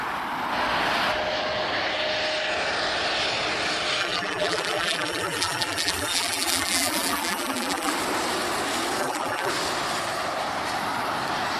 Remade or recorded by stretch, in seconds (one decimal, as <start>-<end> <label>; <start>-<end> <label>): 0.0-4.0 recorded; 4.0-7.9 remade; 7.9-9.0 recorded; 9.0-9.5 remade; 9.5-11.6 recorded